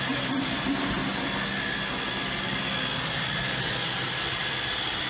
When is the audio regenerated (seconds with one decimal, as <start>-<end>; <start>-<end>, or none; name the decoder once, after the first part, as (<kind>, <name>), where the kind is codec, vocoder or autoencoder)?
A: none